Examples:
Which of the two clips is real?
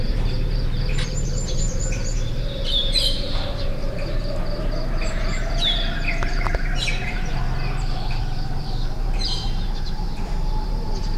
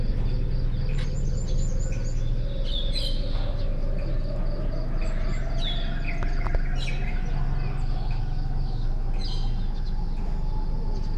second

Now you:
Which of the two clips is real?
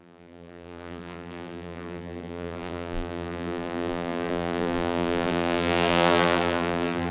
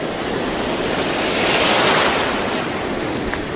second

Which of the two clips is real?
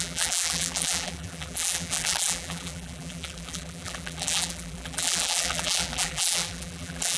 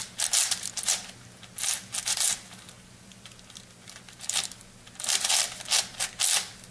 second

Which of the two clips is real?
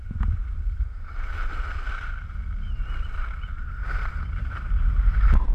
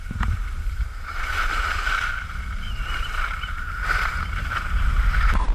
first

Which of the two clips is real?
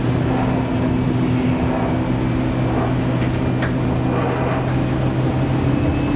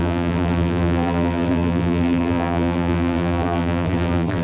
first